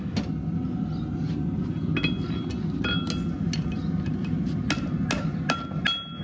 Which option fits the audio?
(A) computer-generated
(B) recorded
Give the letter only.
B